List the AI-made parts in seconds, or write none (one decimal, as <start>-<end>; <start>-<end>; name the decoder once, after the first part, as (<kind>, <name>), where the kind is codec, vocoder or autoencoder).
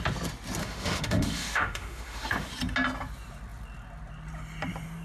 0.6-2.5 (autoencoder, DAC-VAE)